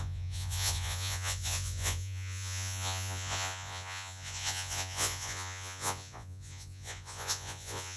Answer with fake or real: fake